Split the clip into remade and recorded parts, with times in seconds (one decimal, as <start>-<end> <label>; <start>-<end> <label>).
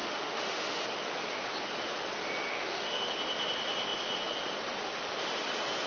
0.0-0.8 remade; 0.8-2.5 recorded; 2.5-3.1 remade; 3.1-5.9 recorded